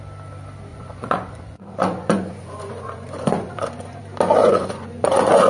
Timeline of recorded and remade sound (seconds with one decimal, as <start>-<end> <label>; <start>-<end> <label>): 0.0-0.7 recorded; 0.7-4.0 remade; 4.0-4.4 recorded; 4.4-5.5 remade